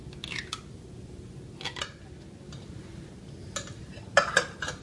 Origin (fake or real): real